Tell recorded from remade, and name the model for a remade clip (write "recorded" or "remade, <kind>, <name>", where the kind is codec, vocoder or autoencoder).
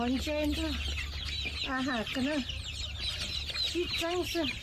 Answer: recorded